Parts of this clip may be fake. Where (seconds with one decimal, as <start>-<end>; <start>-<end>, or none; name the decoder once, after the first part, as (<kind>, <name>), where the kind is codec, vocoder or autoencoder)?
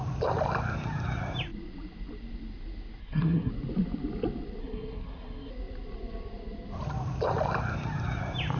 3.0-3.5 (codec, SNAC); 4.6-5.5